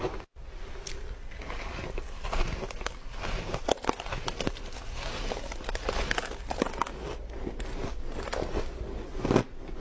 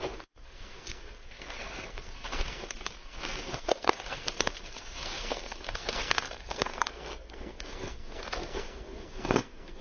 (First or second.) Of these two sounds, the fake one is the second